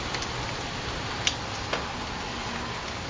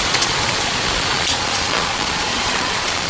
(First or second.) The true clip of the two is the first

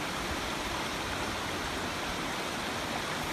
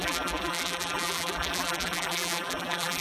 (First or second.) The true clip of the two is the first